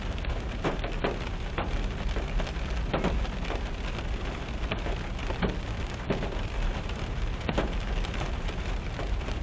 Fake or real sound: fake